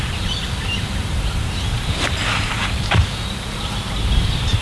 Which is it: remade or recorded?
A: remade